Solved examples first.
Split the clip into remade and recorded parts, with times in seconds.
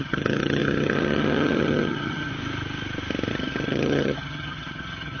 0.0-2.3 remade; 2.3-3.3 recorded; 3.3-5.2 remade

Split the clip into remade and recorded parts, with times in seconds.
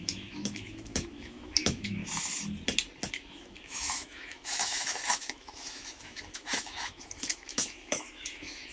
0.0-2.0 remade; 2.0-3.1 recorded; 3.1-8.7 remade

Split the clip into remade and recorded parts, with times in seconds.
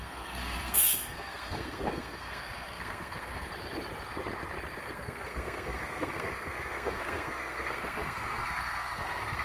0.0-3.5 remade; 3.5-4.8 recorded; 4.8-9.4 remade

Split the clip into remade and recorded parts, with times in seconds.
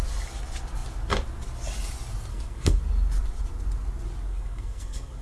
0.0-2.3 recorded; 2.3-2.8 remade; 2.8-4.3 recorded; 4.3-5.2 remade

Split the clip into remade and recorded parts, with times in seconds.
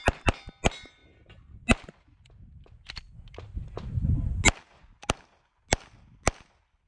0.0-6.9 recorded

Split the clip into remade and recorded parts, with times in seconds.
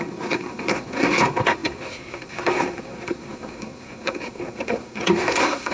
0.0-5.7 remade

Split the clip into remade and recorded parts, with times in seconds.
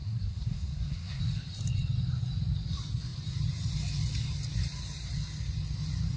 0.0-1.2 remade; 1.2-6.2 recorded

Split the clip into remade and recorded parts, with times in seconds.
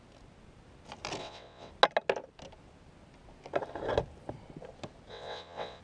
0.0-1.2 recorded; 1.2-1.7 remade; 1.7-5.1 recorded; 5.1-5.8 remade